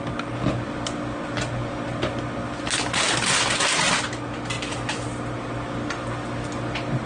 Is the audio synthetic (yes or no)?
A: no